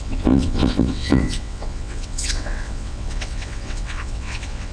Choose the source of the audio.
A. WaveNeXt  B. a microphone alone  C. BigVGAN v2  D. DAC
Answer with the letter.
A